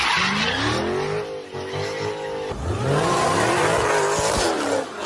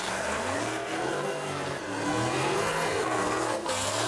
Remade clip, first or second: second